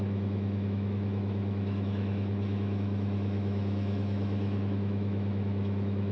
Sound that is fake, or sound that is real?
fake